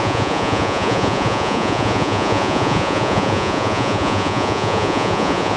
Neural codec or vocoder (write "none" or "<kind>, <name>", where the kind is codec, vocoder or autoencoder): vocoder, Vocos